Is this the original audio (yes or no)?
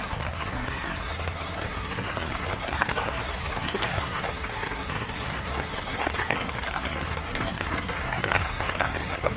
no